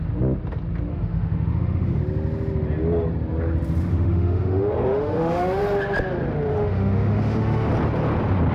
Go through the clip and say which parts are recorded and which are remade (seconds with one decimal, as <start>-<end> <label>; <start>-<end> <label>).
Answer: 0.0-0.9 recorded; 0.9-2.0 remade; 2.0-3.9 recorded; 3.9-5.6 remade; 5.6-6.5 recorded; 6.5-7.7 remade; 7.7-8.5 recorded